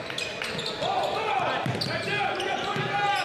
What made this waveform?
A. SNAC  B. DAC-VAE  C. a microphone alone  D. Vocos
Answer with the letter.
C